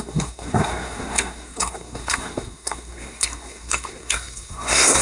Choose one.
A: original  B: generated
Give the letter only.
B